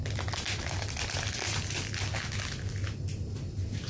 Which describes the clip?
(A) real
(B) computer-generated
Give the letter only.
A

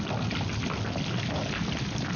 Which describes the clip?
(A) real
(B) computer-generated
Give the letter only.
A